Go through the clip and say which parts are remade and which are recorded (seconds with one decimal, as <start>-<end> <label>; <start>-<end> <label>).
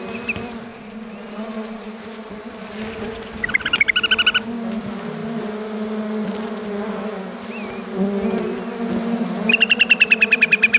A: 0.0-0.7 recorded; 0.7-1.9 remade; 1.9-10.8 recorded